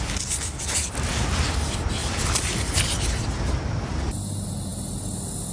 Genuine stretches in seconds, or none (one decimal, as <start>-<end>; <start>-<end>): 0.0-2.0; 3.5-5.5